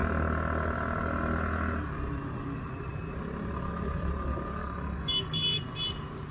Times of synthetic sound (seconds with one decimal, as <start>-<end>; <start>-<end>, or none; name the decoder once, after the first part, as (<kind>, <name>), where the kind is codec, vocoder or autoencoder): 4.6-5.6 (codec, DAC)